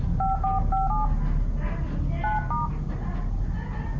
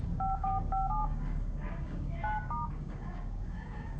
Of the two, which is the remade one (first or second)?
second